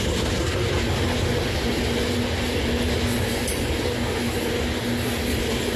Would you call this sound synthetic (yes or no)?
no